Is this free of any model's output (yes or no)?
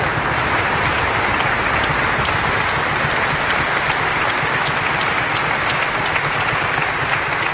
yes